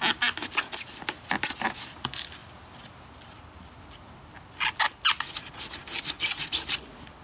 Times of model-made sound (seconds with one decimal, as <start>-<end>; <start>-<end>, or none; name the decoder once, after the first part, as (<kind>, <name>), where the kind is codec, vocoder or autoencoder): none